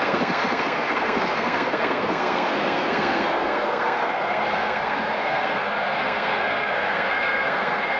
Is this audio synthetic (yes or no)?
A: yes